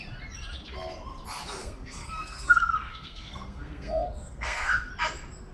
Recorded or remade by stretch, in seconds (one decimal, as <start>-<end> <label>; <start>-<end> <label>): 0.0-1.6 recorded; 1.6-4.9 remade; 4.9-5.5 recorded